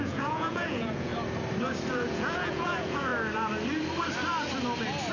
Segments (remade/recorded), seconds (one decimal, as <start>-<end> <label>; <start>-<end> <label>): 0.0-1.1 remade; 1.1-1.9 recorded; 1.9-3.1 remade; 3.1-5.1 recorded